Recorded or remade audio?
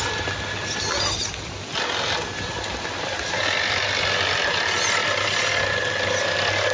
recorded